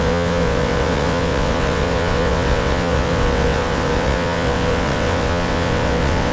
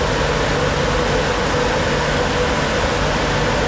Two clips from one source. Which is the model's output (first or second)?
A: first